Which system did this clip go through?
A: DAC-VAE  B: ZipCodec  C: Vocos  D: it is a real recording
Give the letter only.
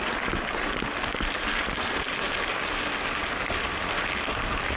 D